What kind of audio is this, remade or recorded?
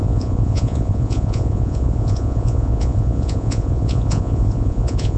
remade